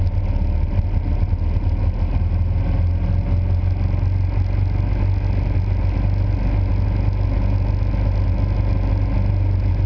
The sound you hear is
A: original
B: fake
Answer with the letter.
A